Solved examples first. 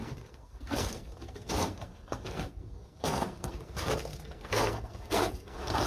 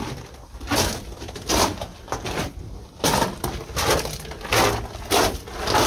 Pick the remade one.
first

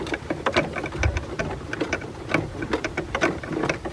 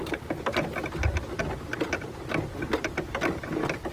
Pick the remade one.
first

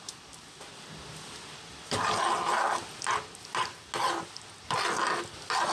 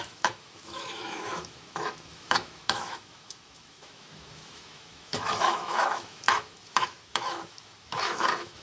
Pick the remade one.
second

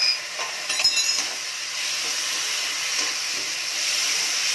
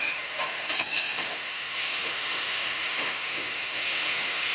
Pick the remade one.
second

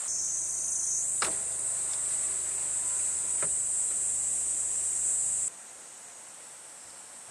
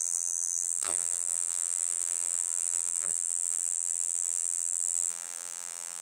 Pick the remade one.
second